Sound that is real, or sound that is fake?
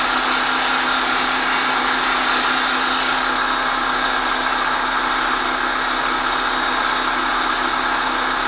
real